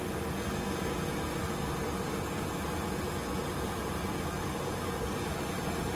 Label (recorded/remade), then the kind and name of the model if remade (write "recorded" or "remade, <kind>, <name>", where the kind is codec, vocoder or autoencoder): recorded